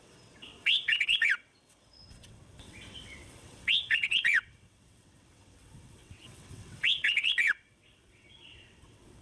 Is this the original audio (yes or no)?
no